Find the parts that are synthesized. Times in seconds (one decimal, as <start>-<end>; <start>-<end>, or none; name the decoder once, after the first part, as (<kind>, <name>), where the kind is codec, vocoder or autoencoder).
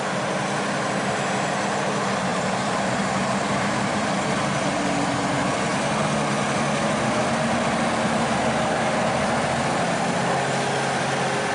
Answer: 2.3-4.2 (vocoder, BigVGAN v2)